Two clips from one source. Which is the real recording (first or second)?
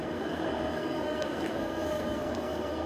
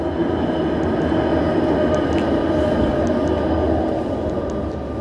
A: second